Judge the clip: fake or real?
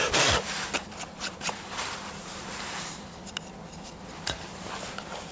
real